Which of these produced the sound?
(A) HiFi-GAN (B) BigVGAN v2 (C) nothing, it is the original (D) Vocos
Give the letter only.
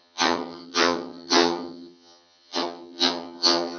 A